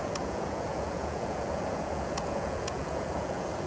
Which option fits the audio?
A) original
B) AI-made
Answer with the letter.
B